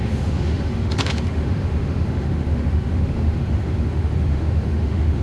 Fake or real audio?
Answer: fake